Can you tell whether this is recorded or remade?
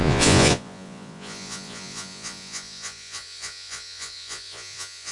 remade